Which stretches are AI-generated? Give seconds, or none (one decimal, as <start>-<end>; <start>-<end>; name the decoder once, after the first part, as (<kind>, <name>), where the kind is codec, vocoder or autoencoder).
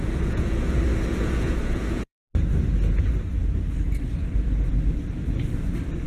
0.0-2.2 (vocoder, Vocos)